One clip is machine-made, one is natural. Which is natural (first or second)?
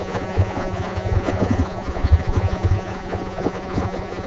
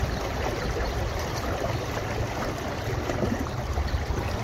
second